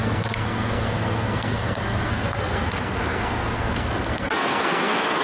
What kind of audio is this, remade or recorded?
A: remade